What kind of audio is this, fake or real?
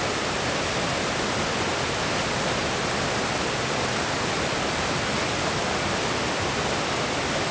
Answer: real